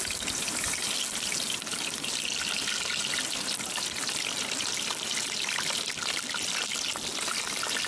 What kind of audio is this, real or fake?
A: real